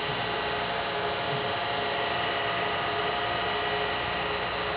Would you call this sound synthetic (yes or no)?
no